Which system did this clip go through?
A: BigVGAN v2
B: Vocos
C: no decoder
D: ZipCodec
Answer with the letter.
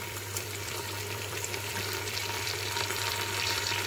A